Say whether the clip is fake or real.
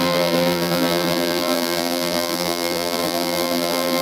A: fake